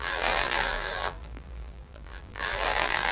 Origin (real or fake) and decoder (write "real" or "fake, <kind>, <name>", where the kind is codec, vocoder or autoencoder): fake, vocoder, BigVGAN v2